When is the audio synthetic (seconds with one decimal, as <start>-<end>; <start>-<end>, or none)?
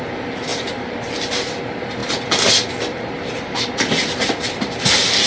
0.5-1.6; 2.0-5.3